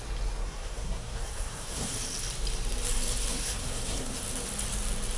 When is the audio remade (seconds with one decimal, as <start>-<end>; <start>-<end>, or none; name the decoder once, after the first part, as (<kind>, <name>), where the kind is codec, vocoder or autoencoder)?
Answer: 0.4-1.9 (codec, SNAC); 3.3-4.2